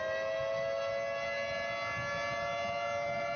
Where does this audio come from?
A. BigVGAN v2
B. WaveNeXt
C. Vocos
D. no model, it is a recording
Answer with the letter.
D